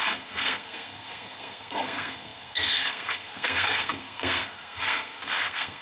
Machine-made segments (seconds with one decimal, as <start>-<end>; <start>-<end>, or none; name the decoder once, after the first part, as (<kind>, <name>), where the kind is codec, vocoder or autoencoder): 0.0-5.8 (codec, SNAC)